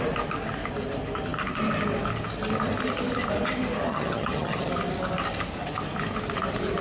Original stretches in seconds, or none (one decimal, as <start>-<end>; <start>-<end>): 0.0-3.9; 4.7-6.8